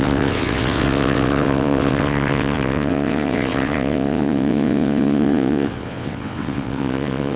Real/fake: fake